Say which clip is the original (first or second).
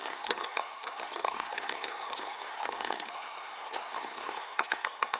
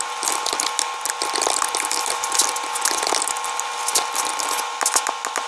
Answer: second